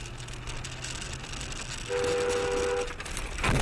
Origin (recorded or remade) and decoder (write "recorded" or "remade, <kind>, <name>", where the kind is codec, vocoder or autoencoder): recorded